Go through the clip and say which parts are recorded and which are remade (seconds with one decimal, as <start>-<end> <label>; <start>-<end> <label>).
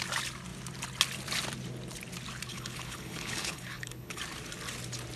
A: 0.0-2.5 recorded; 2.5-4.2 remade; 4.2-5.2 recorded